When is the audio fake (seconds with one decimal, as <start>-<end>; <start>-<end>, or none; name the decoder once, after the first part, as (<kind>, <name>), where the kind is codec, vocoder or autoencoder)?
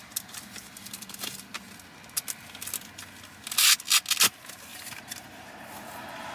4.7-5.6 (vocoder, BigVGAN v2)